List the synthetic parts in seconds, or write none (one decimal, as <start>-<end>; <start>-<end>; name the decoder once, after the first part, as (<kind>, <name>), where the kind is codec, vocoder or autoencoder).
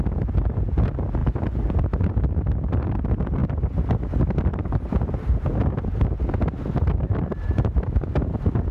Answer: none